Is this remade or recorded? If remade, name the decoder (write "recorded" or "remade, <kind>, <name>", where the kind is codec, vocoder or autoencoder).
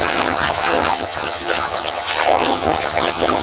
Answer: remade, vocoder, HiFi-GAN